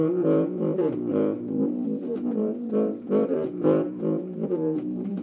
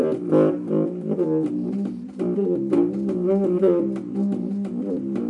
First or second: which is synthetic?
first